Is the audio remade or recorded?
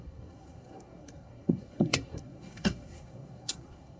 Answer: remade